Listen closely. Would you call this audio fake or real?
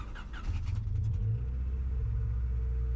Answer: real